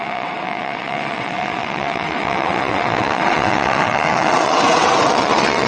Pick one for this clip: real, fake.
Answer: fake